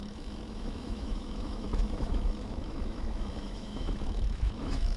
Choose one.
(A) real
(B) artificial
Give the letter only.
B